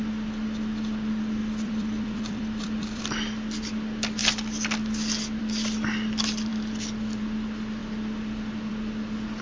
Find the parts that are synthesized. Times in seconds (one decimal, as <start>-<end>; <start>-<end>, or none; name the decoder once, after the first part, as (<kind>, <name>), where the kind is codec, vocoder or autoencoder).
1.4-3.0 (vocoder, BigVGAN v2)